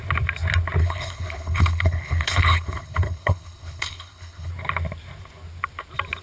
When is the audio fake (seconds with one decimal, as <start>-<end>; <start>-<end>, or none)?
0.8-4.5